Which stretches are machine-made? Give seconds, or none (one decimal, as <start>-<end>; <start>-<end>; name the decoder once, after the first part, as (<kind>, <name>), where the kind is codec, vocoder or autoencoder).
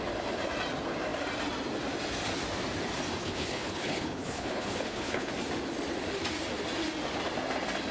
3.2-5.3 (codec, HILCodec)